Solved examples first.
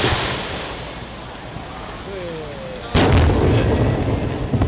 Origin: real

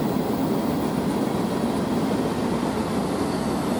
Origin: real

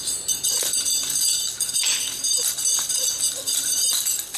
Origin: real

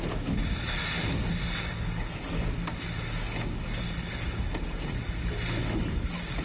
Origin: real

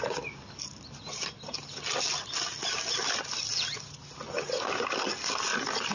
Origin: real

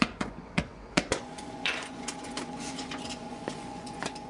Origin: fake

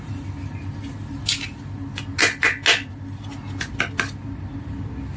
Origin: real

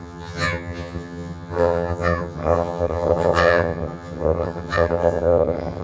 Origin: fake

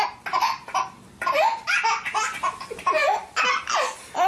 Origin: real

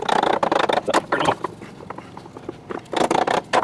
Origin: real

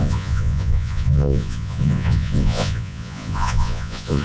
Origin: fake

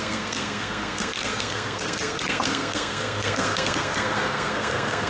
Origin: fake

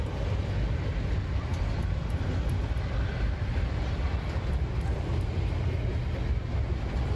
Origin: real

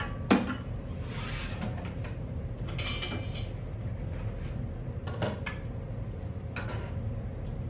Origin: real